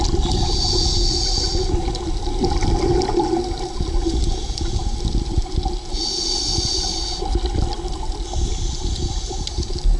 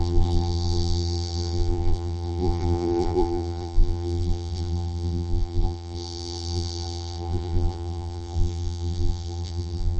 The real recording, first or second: first